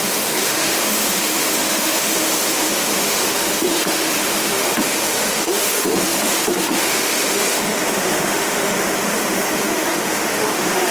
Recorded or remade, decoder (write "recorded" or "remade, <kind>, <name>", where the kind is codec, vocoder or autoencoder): remade, autoencoder, DAC-VAE